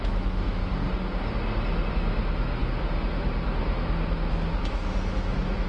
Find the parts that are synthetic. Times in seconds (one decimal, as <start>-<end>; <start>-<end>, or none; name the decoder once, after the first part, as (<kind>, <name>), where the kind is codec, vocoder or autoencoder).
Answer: 0.0-0.6 (autoencoder, DAC-VAE); 1.9-2.6; 4.6-5.7